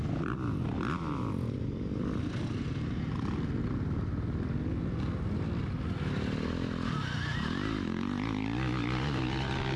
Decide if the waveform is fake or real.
real